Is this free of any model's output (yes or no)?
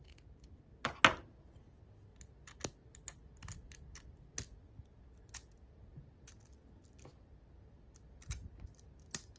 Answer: yes